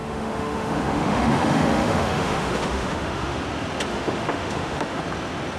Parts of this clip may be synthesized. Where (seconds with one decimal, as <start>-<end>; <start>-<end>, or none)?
0.0-3.4; 3.9-5.0